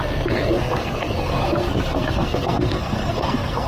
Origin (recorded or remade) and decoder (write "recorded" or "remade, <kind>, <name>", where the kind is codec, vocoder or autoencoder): remade, codec, SNAC